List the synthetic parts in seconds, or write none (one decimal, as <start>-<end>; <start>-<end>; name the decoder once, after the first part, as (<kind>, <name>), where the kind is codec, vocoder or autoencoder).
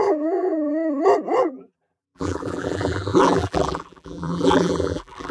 0.0-0.7 (vocoder, BigVGAN v2); 1.4-5.3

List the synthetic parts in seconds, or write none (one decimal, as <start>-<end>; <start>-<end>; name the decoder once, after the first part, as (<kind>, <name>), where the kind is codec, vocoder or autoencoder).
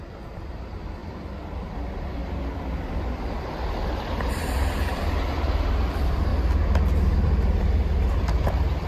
0.0-6.3 (vocoder, BigVGAN v2); 8.2-8.9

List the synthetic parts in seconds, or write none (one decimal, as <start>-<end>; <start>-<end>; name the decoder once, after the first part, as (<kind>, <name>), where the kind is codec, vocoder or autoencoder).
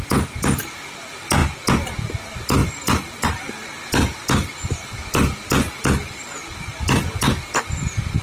2.6-3.4 (vocoder, BigVGAN v2); 3.8-7.6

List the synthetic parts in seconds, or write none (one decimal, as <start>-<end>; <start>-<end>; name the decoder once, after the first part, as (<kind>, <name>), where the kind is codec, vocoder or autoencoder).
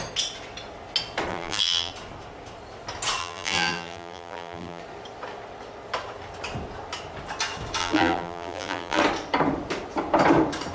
1.3-1.9 (vocoder, BigVGAN v2); 3.2-4.8; 7.8-9.0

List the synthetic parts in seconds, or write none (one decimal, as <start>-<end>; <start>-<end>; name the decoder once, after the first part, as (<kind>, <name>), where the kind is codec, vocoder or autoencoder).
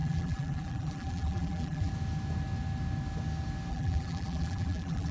0.0-1.9 (vocoder, BigVGAN v2); 3.7-5.1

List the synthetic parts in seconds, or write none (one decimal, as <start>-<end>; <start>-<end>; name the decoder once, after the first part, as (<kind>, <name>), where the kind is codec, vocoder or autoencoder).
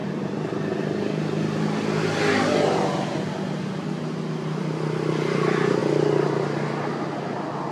none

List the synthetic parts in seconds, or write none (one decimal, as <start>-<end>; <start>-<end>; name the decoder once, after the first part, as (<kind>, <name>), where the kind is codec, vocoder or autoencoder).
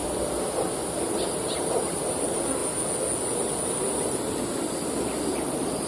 1.3-2.6 (vocoder, BigVGAN v2); 5.5-5.9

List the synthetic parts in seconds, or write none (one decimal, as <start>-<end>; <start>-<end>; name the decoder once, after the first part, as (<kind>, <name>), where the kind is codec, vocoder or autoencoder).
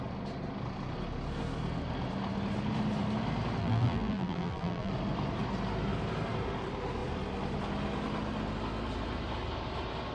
3.6-4.9 (vocoder, BigVGAN v2)